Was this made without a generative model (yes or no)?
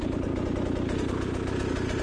yes